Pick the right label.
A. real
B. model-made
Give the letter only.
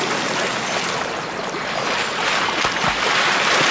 A